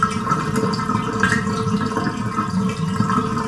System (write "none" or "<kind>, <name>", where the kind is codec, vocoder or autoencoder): none